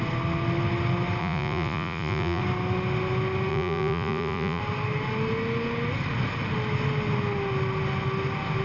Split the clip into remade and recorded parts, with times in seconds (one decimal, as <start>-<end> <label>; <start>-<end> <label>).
0.0-1.2 recorded; 1.2-2.4 remade; 2.4-3.5 recorded; 3.5-4.6 remade; 4.6-8.6 recorded